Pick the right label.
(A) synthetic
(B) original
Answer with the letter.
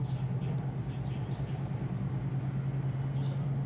B